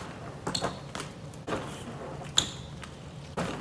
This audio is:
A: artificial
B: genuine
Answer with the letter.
B